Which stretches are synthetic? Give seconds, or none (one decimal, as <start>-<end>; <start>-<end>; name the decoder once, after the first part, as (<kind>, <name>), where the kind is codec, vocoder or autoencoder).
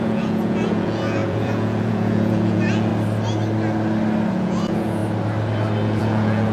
0.0-2.9 (vocoder, Vocos); 4.3-5.0; 6.0-6.5